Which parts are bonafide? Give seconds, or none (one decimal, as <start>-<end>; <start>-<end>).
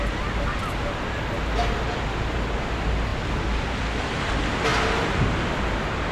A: 0.0-6.1